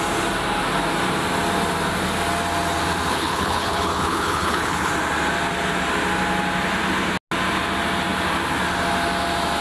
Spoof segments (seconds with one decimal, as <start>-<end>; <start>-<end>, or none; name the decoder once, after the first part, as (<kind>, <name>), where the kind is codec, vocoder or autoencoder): 3.1-4.9 (codec, HILCodec)